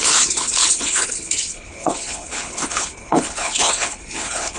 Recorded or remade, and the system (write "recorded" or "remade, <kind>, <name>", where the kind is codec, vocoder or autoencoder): remade, codec, HILCodec